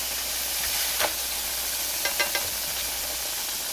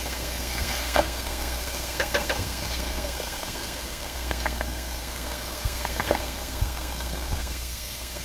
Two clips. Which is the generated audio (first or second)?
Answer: second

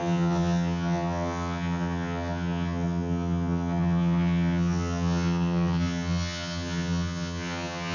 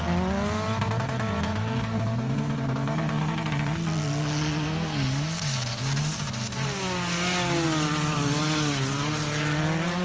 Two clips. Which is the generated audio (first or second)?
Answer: first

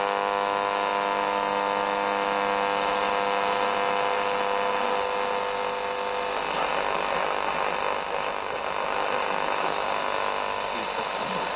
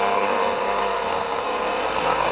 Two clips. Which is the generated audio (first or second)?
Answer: second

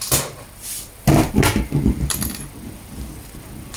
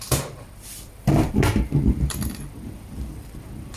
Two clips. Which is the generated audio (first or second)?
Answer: second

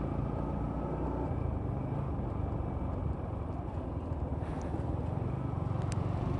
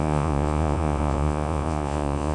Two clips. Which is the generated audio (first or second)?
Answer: second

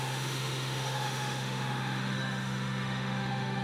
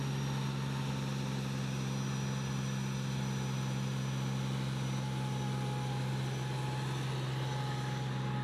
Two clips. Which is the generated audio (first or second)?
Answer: first